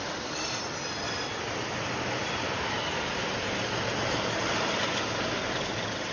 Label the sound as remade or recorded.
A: recorded